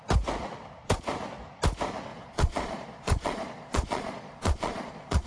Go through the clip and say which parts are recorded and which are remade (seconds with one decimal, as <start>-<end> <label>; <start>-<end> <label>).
0.0-2.1 recorded; 2.1-5.3 remade